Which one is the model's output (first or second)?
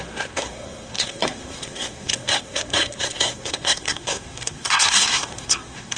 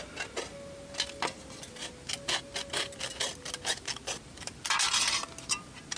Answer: first